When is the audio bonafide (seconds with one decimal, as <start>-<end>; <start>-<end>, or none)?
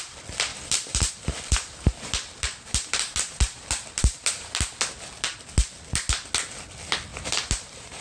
0.0-0.5; 1.1-1.5; 4.7-7.1